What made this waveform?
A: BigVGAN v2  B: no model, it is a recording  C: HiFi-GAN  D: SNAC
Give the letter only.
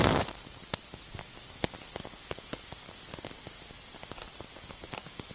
B